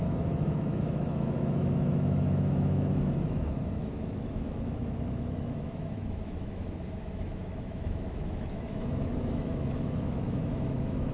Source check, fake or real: fake